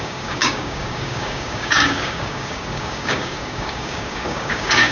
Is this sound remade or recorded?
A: remade